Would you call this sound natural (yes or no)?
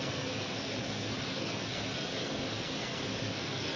no